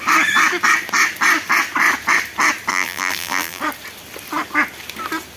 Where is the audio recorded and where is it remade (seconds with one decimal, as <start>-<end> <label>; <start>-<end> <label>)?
0.0-2.7 recorded; 2.7-3.6 remade; 3.6-5.4 recorded